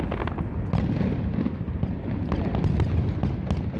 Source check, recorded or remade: recorded